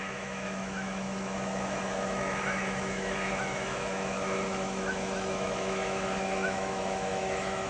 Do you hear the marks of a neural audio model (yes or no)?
yes